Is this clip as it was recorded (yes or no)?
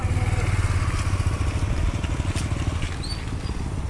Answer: yes